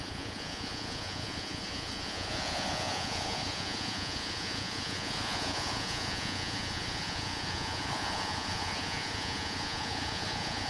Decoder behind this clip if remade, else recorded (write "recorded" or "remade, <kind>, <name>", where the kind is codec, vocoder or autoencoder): remade, vocoder, Vocos